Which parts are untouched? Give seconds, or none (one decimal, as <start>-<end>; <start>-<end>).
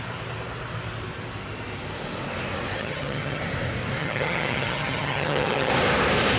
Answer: 0.0-2.8; 3.4-4.0; 5.7-6.4